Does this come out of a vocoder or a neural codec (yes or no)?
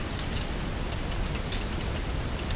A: no